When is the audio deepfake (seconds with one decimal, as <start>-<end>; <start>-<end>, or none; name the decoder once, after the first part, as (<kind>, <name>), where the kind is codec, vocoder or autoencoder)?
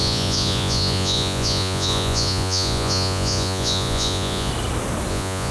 0.0-4.5 (vocoder, Vocos); 5.1-5.5